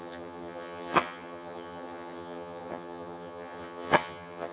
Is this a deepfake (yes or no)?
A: yes